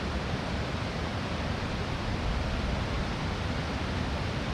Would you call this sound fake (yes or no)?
yes